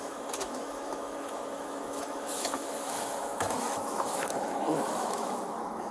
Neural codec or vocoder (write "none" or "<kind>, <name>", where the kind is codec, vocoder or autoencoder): autoencoder, DAC-VAE